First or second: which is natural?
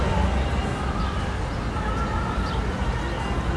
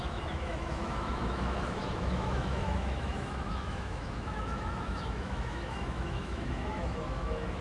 first